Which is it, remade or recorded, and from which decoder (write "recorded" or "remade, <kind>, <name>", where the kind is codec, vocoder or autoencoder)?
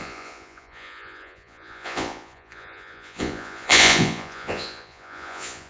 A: remade, vocoder, Vocos